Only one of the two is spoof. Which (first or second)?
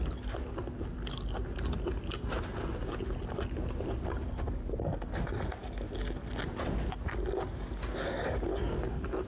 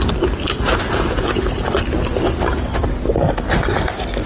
second